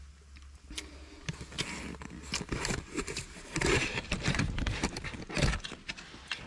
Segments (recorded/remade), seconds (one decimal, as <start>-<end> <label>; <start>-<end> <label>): 0.0-2.3 recorded; 2.3-5.2 remade; 5.2-6.5 recorded